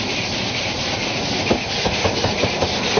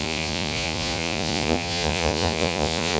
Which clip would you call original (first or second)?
first